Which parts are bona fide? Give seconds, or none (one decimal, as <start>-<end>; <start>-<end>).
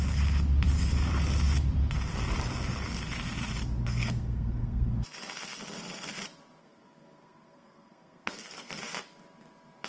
0.0-3.9; 4.9-6.6; 8.8-9.9